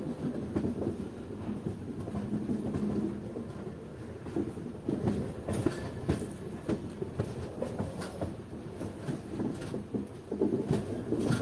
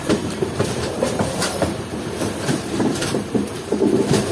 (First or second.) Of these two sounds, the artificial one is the second